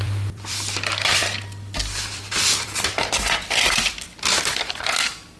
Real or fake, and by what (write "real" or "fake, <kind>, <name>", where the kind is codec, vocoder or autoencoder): fake, vocoder, BigVGAN v2